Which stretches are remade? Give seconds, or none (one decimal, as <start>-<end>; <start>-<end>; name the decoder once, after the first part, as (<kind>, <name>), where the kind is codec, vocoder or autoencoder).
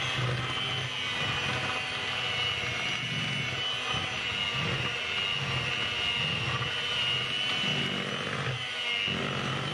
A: none